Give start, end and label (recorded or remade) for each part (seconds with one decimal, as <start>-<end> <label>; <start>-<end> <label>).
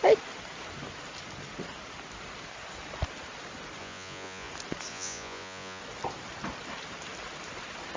0.0-3.8 recorded; 3.8-4.5 remade; 4.5-4.9 recorded; 4.9-5.8 remade; 5.8-8.0 recorded